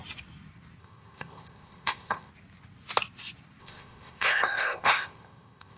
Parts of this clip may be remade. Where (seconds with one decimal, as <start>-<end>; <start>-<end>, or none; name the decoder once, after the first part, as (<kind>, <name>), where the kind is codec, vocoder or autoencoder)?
0.8-2.3 (codec, ZipCodec); 3.6-5.8